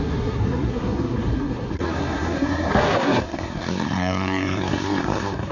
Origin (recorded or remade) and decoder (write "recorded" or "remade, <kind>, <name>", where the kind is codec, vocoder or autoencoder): remade, codec, SNAC